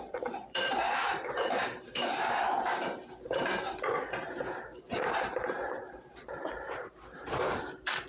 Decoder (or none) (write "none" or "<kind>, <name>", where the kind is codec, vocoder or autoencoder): vocoder, BigVGAN v2